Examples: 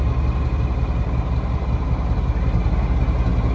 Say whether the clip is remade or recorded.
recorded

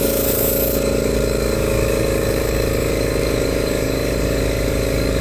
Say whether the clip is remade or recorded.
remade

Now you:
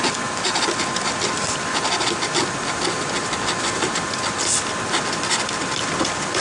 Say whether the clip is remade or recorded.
recorded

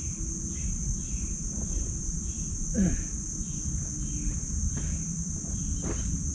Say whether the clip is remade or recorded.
recorded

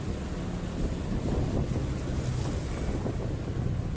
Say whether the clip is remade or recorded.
recorded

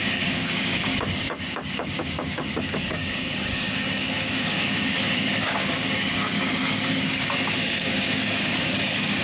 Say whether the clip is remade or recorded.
remade